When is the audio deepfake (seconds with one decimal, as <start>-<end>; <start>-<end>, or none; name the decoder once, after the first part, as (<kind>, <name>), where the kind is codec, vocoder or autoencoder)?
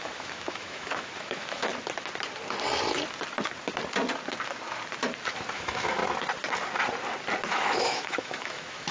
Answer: 0.0-1.7 (autoencoder, DAC-VAE); 5.5-6.0; 7.5-8.9